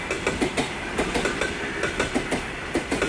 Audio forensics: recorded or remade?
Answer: recorded